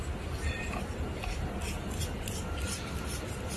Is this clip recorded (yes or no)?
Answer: yes